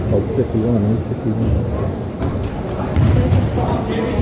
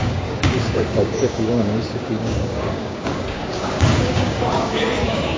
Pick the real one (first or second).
first